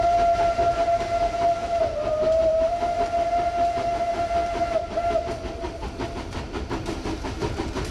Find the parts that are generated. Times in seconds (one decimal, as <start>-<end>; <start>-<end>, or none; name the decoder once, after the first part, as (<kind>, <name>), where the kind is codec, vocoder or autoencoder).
1.6-2.7 (vocoder, BigVGAN v2); 4.4-5.1